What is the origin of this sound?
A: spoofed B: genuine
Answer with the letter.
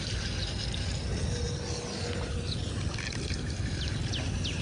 B